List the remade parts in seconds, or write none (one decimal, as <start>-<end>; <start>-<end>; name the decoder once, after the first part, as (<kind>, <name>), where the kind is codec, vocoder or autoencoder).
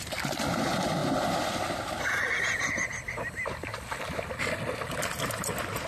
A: none